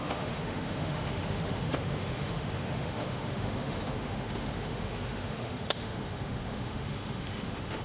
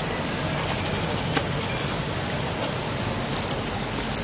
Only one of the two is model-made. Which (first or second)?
first